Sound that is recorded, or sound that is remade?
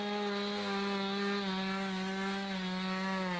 recorded